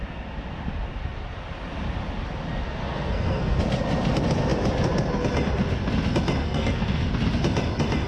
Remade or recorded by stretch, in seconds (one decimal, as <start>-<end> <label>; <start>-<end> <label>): 0.0-2.8 recorded; 2.8-3.6 remade; 3.6-6.4 recorded; 6.4-7.1 remade; 7.1-8.1 recorded